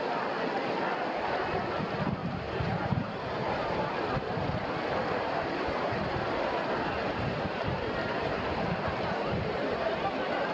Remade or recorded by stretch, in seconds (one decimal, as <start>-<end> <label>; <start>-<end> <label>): 0.0-2.2 recorded; 2.2-3.9 remade; 3.9-5.0 recorded; 5.0-9.8 remade; 9.8-10.5 recorded